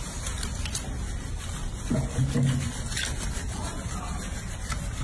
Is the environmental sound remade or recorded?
recorded